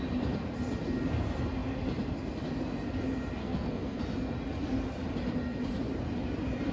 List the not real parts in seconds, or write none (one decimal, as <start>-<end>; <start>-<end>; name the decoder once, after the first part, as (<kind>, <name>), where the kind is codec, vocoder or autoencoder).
3.4-4.0 (codec, SNAC)